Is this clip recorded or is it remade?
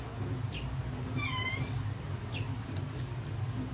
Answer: recorded